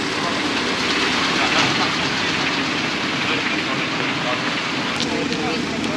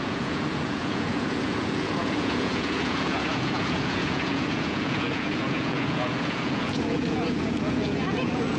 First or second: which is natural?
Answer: first